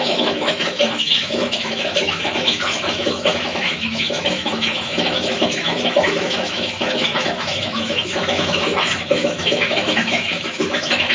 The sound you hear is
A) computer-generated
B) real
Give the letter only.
A